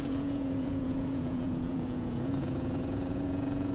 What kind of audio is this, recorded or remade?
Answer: remade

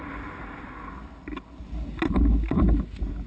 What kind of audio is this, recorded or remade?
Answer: recorded